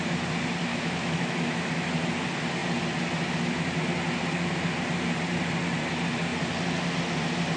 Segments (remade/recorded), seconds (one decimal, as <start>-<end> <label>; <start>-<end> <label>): 0.0-0.7 recorded; 0.7-1.7 remade; 1.7-7.6 recorded